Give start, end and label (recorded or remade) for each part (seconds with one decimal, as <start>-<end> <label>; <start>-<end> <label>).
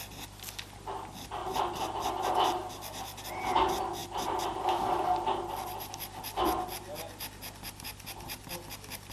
0.0-9.1 recorded